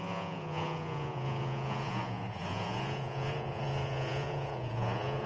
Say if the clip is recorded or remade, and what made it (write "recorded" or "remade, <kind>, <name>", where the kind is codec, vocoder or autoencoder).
remade, vocoder, Vocos